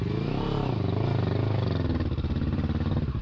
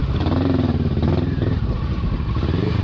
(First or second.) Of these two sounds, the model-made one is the second